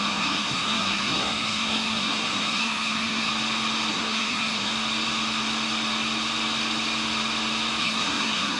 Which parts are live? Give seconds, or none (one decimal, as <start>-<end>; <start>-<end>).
3.3-3.9; 4.7-7.8